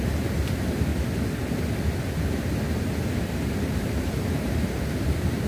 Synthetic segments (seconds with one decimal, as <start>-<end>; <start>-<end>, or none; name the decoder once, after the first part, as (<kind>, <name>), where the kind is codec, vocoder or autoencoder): 0.0-0.9 (vocoder, BigVGAN v2); 3.6-5.5